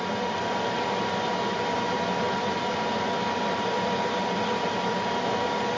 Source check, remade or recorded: recorded